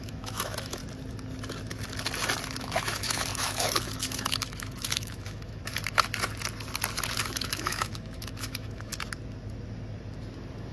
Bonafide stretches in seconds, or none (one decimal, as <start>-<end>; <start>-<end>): 0.8-2.6; 5.6-7.2; 8.9-10.7